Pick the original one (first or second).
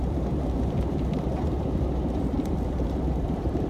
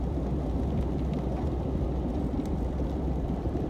second